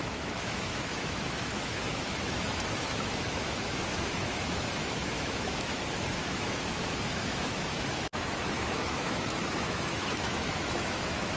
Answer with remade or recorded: remade